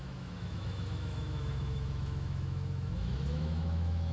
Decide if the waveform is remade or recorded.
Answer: remade